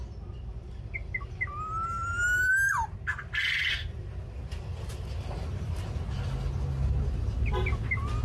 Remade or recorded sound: recorded